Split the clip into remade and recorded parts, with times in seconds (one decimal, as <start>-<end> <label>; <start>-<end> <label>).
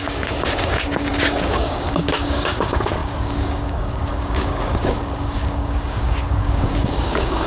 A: 0.0-7.5 remade